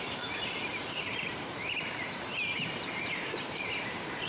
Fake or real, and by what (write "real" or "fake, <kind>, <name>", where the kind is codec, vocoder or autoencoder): fake, vocoder, BigVGAN v2